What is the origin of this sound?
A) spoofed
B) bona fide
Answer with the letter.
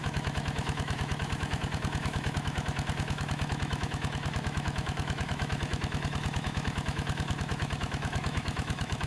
A